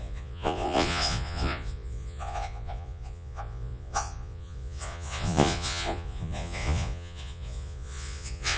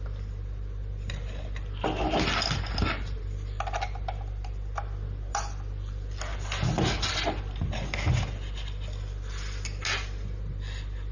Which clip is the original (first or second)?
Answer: second